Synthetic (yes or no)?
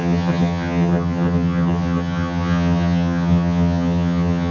yes